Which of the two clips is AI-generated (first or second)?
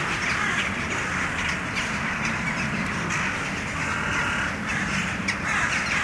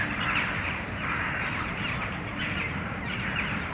second